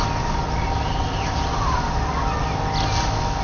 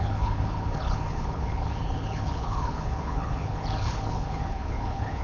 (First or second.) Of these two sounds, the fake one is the second